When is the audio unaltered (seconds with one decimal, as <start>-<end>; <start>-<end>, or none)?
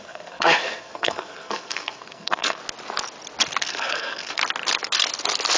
2.6-3.6; 4.4-5.6